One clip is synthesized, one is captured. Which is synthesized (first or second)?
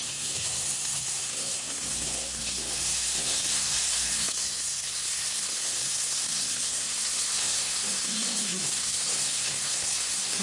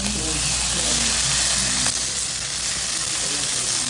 first